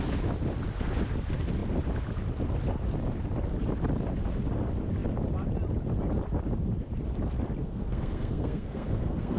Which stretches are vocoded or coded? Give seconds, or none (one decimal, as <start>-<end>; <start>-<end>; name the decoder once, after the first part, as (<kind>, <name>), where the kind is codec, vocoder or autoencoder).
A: 7.6-9.4 (codec, SNAC)